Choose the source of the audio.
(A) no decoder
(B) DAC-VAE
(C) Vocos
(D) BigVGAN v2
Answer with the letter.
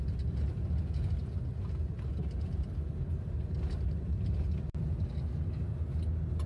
A